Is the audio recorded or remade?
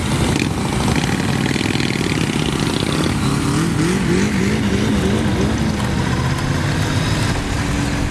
recorded